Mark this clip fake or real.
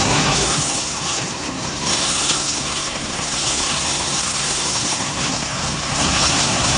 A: fake